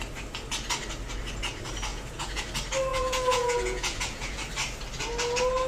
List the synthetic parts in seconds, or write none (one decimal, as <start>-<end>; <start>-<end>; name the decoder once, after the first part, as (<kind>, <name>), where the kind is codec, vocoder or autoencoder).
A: 1.9-2.4 (vocoder, Vocos); 2.9-4.4